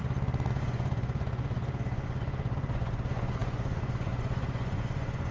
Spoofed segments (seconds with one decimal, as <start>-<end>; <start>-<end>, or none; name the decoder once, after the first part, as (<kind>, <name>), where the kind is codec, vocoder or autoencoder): 0.5-5.3 (vocoder, Vocos)